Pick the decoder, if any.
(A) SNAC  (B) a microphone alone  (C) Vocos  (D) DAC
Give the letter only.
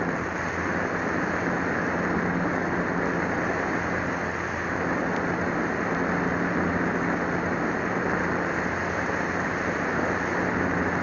B